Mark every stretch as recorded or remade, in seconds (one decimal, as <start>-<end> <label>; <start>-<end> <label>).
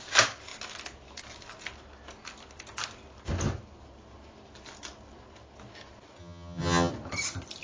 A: 0.0-6.2 recorded; 6.2-6.9 remade; 6.9-7.6 recorded